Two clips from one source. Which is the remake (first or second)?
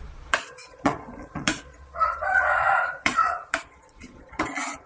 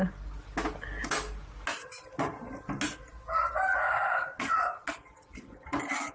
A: first